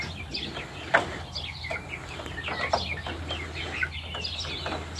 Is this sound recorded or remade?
recorded